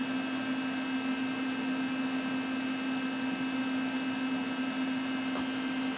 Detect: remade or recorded recorded